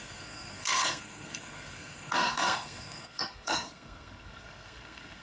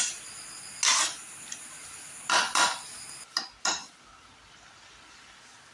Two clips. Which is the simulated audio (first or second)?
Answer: first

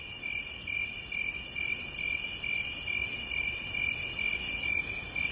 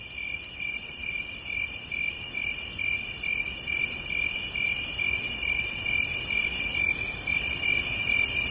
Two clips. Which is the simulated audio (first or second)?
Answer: second